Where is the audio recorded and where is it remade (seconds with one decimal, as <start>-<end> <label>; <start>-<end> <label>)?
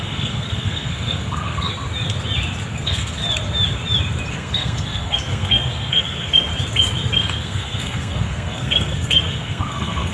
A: 0.0-1.7 remade; 1.7-2.7 recorded; 2.7-3.2 remade; 3.2-4.3 recorded; 4.3-6.5 remade; 6.5-7.1 recorded; 7.1-10.1 remade